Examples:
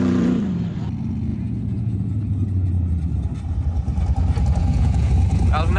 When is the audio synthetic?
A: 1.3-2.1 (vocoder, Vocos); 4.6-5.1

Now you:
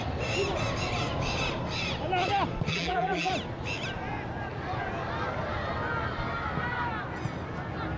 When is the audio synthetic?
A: 2.7-3.3 (vocoder, BigVGAN v2)

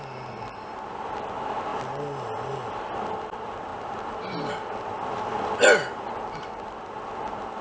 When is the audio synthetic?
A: none

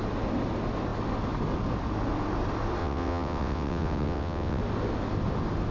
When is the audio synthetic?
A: 2.8-4.6 (vocoder, WaveNeXt)